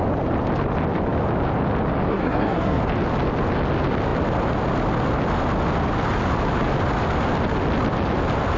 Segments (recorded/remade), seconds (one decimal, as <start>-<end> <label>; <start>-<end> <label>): 0.0-2.1 recorded; 2.1-2.8 remade; 2.8-8.6 recorded